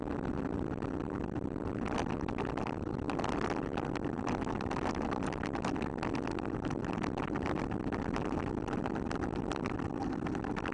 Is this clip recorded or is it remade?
recorded